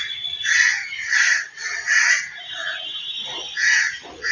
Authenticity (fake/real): fake